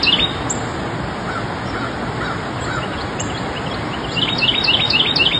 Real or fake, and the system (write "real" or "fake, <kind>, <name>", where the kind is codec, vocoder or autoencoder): real